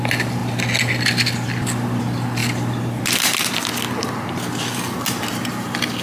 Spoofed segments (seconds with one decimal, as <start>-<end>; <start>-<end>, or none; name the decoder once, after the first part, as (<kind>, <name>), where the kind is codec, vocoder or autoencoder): none